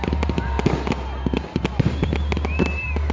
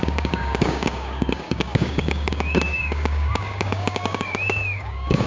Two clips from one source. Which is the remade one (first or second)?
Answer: second